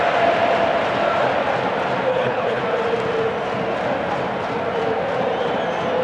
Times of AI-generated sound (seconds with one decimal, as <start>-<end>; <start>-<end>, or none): 2.1-2.6